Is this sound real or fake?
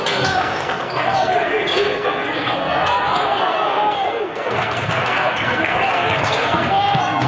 fake